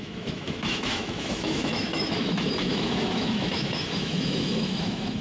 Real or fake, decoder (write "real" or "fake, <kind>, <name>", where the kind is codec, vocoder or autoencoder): fake, autoencoder, DAC-VAE